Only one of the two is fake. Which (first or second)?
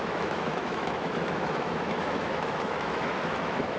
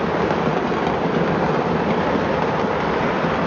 first